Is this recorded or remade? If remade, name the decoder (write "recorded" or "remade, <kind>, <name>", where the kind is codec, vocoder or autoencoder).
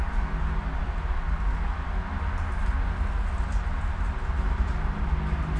recorded